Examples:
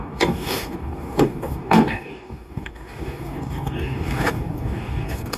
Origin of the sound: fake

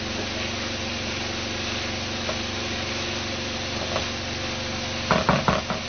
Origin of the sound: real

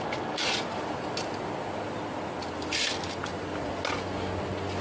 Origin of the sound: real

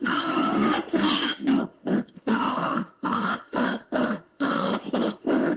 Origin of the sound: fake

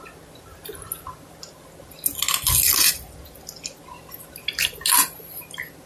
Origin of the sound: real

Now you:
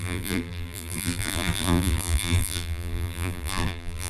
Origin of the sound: fake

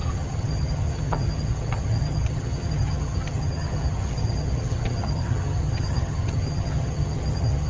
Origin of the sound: fake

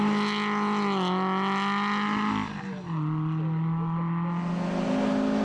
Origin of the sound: real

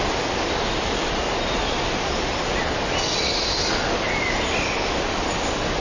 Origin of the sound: real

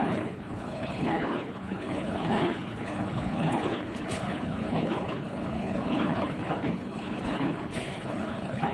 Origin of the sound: fake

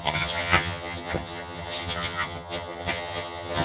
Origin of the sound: fake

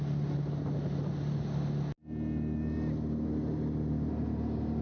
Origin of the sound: real